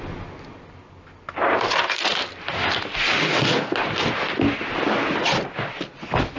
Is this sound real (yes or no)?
yes